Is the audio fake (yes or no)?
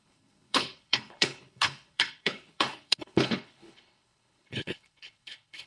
yes